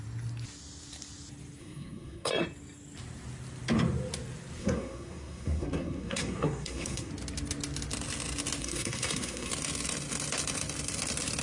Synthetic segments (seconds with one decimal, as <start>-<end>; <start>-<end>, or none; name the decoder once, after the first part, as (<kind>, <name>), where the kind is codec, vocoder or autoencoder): 1.6-2.3 (codec, SNAC); 4.6-7.1; 8.6-9.5